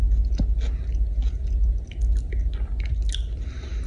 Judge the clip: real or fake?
real